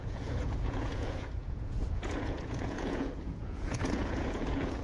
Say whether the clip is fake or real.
fake